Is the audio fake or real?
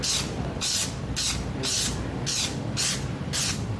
real